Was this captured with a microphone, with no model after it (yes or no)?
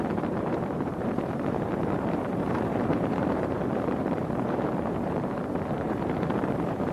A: no